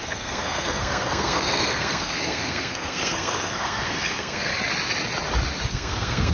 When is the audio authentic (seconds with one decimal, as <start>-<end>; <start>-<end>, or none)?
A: 4.5-5.7